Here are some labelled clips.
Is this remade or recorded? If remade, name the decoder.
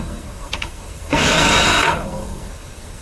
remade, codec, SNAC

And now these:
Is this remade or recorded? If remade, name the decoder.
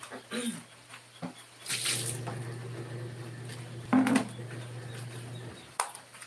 recorded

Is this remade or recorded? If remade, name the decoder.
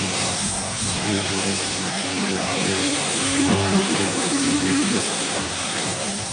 remade, codec, SNAC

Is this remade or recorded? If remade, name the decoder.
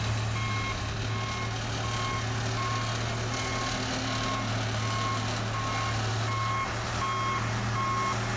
recorded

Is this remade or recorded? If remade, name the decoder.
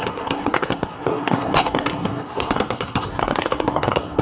remade, codec, SNAC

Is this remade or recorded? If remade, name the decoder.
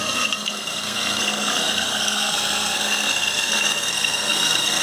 remade, codec, SNAC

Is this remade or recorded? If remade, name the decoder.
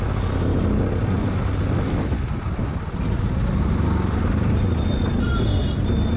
recorded